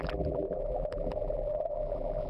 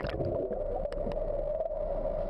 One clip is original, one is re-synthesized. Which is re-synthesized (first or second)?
first